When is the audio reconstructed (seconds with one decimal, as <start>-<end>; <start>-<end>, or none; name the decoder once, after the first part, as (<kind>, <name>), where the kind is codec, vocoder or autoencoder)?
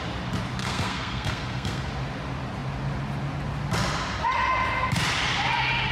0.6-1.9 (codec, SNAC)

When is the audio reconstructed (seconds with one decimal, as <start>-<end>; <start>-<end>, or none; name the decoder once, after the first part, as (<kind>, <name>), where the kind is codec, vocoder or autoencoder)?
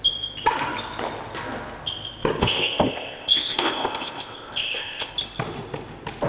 2.4-5.1 (codec, ZipCodec)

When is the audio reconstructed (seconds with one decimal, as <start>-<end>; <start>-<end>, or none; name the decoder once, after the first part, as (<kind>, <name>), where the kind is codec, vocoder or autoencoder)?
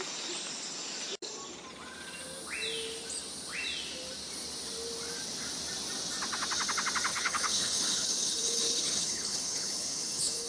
7.1-10.5 (codec, HILCodec)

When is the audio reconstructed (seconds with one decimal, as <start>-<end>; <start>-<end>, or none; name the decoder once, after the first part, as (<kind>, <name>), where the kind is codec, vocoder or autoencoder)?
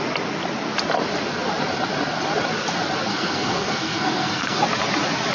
3.1-4.6 (codec, SNAC)